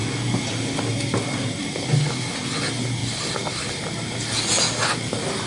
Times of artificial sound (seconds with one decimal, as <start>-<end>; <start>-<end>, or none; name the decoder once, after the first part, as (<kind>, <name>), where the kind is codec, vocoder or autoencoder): 3.0-3.7 (vocoder, BigVGAN v2)